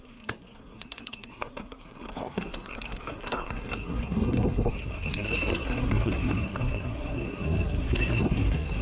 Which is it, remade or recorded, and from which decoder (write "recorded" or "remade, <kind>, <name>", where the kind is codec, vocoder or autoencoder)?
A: remade, codec, SNAC